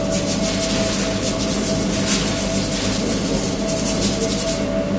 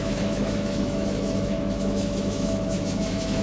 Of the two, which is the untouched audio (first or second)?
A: first